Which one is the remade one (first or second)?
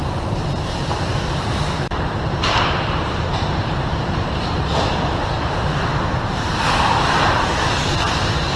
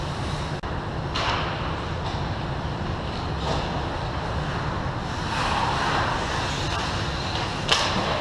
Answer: first